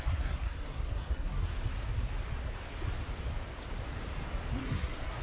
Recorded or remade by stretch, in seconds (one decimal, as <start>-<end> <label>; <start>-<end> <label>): 0.0-1.5 remade; 1.5-4.6 recorded; 4.6-5.2 remade